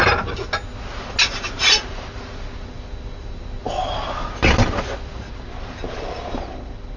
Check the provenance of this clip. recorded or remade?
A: recorded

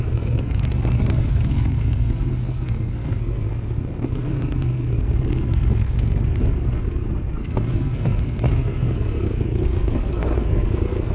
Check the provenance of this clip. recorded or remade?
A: remade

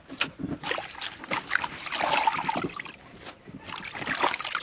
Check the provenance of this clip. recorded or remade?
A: recorded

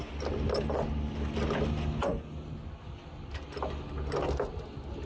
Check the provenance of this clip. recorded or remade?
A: recorded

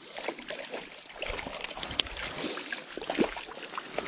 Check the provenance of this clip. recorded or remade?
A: recorded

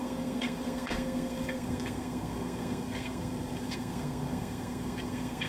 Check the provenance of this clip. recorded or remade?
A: remade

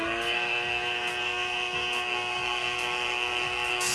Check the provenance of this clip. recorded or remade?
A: remade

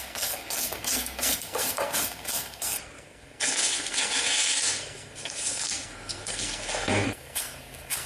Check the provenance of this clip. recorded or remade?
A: remade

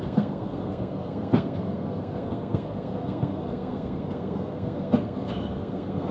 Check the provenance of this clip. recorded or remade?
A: remade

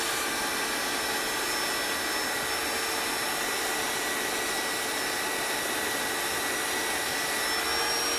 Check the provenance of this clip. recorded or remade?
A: recorded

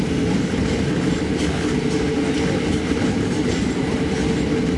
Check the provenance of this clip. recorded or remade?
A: recorded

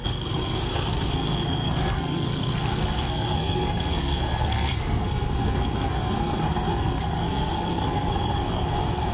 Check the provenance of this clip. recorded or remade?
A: remade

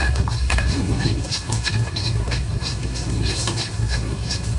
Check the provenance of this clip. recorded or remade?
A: remade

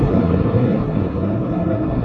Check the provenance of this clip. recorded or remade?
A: remade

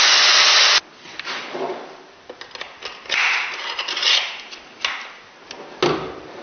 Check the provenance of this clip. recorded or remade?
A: recorded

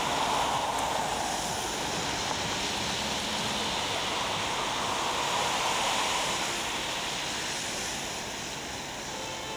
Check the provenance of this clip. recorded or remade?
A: recorded